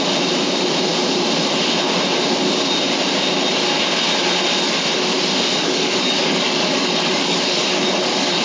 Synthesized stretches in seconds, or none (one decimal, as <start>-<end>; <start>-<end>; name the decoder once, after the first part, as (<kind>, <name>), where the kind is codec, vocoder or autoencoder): 5.6-8.4 (codec, DAC)